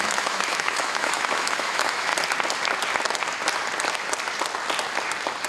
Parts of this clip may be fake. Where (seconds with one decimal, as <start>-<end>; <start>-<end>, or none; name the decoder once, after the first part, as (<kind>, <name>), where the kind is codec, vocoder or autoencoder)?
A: 0.0-2.1 (autoencoder, DAC-VAE)